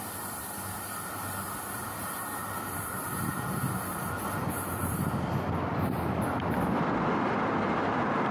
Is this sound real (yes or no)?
no